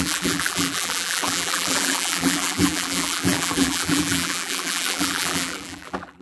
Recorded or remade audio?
remade